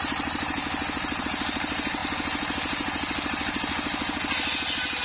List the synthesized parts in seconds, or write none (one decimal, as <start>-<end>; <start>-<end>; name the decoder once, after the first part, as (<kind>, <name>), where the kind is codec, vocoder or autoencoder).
0.0-0.6 (vocoder, BigVGAN v2); 1.2-2.0